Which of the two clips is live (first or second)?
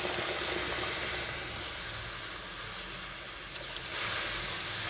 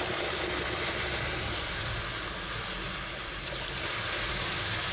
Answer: first